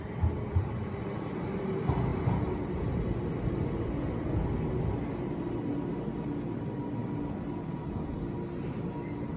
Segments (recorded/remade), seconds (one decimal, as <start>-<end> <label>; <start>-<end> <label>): 0.0-9.4 recorded